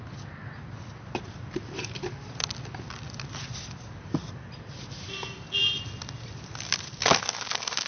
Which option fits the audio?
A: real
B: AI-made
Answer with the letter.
A